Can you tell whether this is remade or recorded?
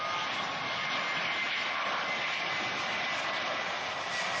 recorded